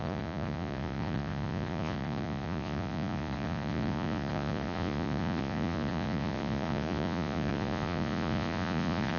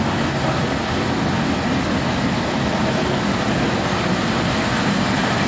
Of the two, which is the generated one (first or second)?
first